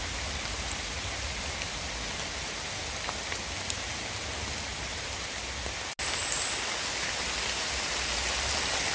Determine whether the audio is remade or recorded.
recorded